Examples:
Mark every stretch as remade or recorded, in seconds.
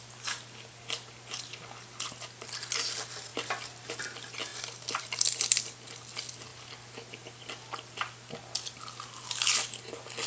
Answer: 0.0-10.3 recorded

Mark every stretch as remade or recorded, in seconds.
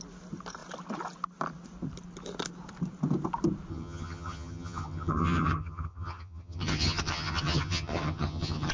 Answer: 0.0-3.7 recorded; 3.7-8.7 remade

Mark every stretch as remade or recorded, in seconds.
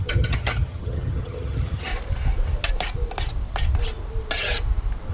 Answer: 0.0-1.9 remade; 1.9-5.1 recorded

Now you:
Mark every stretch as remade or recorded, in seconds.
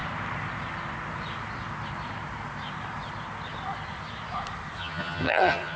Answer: 0.0-4.8 recorded; 4.8-5.8 remade